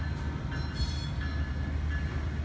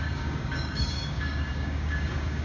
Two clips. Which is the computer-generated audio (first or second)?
second